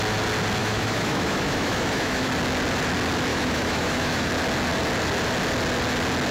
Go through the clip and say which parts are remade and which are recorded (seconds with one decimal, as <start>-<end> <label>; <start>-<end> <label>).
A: 0.0-0.6 recorded; 0.6-2.3 remade; 2.3-3.3 recorded; 3.3-4.3 remade; 4.3-6.3 recorded